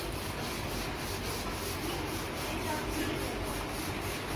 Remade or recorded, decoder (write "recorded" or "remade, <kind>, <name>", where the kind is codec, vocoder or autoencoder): recorded